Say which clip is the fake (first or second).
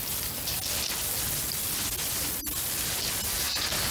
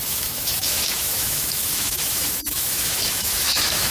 second